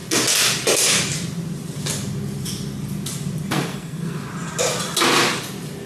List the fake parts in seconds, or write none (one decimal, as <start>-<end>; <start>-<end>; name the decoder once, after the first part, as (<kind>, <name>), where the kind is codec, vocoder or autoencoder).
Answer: 3.5-4.3 (codec, SNAC)